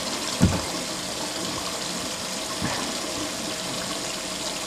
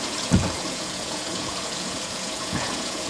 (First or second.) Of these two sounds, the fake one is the second